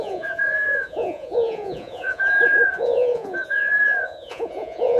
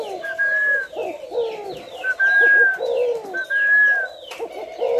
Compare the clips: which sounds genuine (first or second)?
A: second